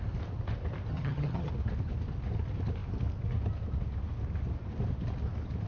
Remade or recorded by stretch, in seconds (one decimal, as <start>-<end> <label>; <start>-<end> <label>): 0.0-0.9 recorded; 0.9-1.5 remade; 1.5-5.7 recorded